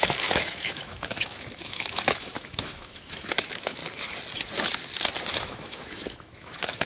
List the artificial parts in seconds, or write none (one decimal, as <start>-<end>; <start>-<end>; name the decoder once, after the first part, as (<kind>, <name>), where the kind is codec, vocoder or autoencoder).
0.0-3.8 (autoencoder, DAC-VAE); 5.3-6.9